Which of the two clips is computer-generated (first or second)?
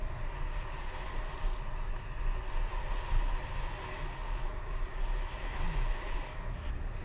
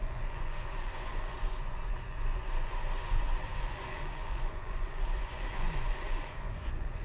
second